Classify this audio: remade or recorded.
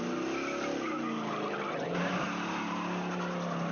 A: recorded